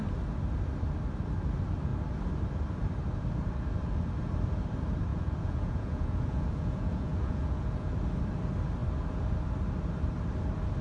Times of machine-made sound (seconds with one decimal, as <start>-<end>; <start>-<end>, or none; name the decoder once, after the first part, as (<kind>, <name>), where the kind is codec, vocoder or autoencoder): 5.1-8.0 (vocoder, Vocos)

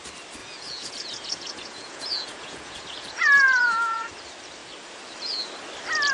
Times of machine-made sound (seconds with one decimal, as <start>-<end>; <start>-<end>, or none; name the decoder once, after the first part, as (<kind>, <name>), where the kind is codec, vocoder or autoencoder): 0.4-4.1 (vocoder, Vocos)

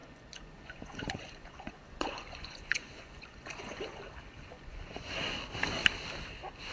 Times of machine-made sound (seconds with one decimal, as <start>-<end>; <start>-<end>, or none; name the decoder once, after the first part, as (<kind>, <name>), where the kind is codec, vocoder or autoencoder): 0.0-4.0 (vocoder, Vocos); 4.4-5.2

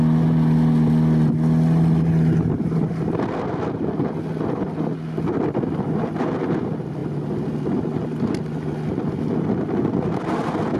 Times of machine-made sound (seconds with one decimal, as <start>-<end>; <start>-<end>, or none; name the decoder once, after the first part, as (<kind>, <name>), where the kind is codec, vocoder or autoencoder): none

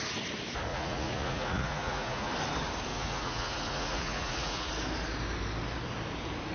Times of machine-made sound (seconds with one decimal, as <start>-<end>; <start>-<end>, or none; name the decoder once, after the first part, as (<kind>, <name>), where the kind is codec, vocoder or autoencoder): 0.7-2.3 (vocoder, Vocos); 2.9-4.7

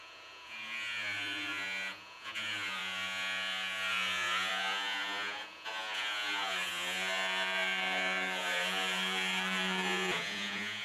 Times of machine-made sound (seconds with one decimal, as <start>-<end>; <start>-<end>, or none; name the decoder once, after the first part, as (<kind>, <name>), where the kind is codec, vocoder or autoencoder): 0.0-10.8 (vocoder, Vocos)

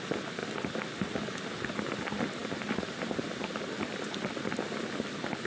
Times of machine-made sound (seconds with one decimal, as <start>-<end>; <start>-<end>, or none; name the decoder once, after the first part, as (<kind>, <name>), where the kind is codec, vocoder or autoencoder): none